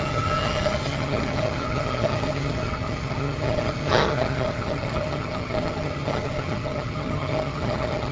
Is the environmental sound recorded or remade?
remade